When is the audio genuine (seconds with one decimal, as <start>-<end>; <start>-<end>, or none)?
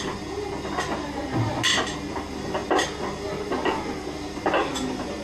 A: 0.0-5.2